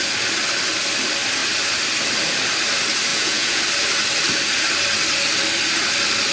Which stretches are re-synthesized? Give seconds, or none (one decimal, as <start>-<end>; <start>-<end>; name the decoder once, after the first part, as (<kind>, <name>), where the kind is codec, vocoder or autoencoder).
3.1-3.6 (vocoder, Vocos)